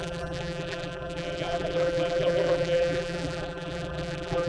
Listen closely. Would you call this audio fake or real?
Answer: fake